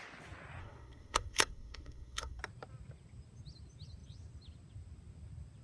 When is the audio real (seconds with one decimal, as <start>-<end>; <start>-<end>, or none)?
0.0-0.6; 2.4-5.6